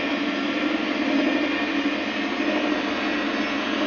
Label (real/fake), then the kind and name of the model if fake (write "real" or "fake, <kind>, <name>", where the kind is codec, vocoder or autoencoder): real